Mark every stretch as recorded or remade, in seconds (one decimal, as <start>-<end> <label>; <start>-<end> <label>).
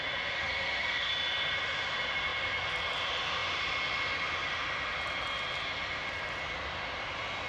0.0-0.4 recorded; 0.4-1.1 remade; 1.1-7.5 recorded